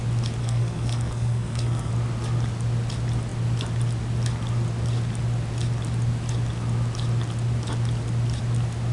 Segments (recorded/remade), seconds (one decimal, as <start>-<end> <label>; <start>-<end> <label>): 0.0-0.4 recorded; 0.4-1.9 remade; 1.9-8.9 recorded